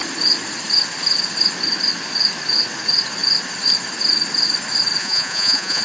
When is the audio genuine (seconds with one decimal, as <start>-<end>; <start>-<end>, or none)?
0.0-5.0